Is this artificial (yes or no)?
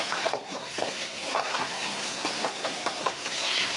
yes